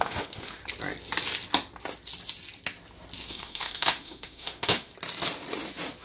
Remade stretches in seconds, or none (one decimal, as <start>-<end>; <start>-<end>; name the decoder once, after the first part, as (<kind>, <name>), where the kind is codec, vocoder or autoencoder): 0.0-0.6 (autoencoder, DAC-VAE); 3.3-4.9

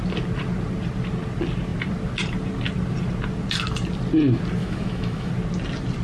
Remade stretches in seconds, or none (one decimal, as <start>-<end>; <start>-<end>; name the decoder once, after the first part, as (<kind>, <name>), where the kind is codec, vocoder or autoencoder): 4.6-5.3 (autoencoder, DAC-VAE)

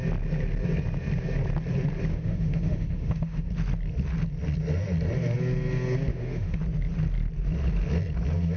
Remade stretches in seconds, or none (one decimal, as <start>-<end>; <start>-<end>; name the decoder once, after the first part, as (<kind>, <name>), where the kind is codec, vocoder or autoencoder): 2.1-3.5 (autoencoder, DAC-VAE); 6.1-6.6

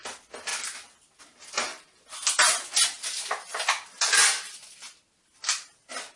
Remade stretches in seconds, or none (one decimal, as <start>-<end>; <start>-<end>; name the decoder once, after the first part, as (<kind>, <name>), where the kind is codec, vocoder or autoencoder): none

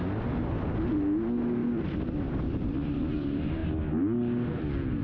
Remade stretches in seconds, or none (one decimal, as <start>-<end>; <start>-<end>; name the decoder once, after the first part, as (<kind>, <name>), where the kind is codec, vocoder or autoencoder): none

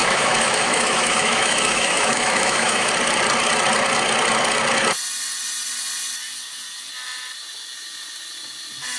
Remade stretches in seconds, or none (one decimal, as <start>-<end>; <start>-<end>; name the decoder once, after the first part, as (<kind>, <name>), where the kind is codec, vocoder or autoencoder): 0.0-2.9 (autoencoder, DAC-VAE)

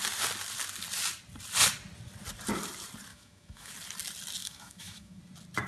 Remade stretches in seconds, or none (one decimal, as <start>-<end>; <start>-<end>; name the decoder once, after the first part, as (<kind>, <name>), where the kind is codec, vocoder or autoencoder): 3.1-3.7 (autoencoder, DAC-VAE); 4.4-5.2

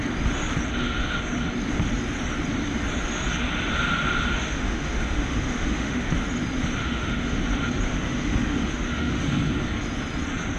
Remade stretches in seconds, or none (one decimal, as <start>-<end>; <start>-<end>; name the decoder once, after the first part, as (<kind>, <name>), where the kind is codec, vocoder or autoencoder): 4.3-6.1 (autoencoder, DAC-VAE); 6.8-7.4; 7.9-9.2